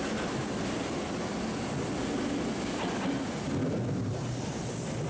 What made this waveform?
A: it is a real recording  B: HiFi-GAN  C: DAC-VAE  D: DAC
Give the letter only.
A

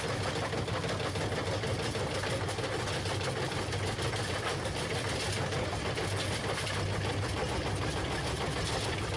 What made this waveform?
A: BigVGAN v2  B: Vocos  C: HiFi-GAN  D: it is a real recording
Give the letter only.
D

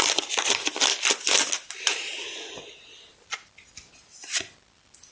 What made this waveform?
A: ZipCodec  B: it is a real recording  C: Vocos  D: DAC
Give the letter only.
B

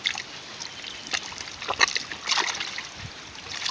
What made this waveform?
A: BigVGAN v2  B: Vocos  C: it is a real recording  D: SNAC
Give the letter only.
C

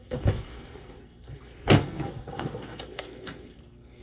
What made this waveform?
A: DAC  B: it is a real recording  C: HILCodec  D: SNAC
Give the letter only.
D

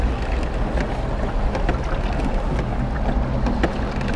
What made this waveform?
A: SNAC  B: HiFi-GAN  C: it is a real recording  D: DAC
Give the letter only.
C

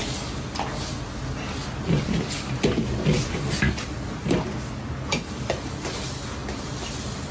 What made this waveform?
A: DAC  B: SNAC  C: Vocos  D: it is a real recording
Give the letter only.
D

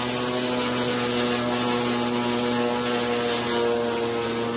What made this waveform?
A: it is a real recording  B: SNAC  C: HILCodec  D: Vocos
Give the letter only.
A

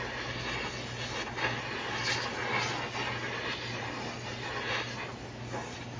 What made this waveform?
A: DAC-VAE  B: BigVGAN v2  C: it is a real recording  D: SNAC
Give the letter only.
C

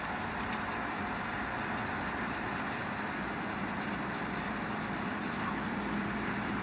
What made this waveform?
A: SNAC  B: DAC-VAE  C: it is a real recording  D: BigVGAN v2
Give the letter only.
C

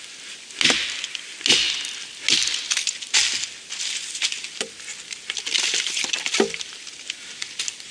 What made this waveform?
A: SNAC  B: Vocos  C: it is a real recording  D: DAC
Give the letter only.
C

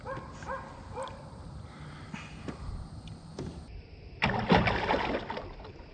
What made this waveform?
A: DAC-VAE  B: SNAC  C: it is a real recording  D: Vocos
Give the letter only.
C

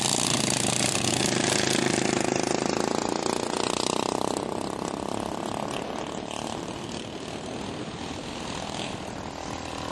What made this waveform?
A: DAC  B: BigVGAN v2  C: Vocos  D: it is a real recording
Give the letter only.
D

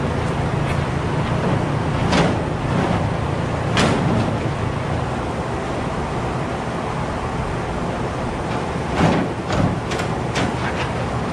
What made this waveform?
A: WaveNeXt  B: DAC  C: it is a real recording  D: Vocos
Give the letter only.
C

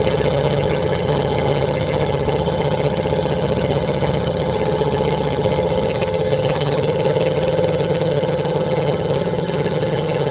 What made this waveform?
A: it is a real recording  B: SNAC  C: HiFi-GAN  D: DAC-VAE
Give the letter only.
C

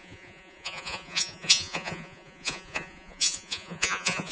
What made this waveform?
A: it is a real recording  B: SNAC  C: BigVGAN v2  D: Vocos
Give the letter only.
D